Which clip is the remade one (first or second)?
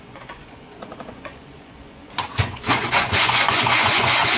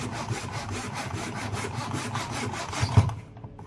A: first